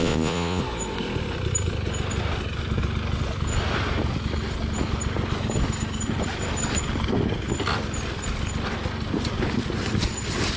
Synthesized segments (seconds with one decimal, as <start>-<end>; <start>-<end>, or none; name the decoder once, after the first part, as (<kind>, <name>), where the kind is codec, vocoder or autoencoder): 0.0-0.6 (vocoder, Vocos)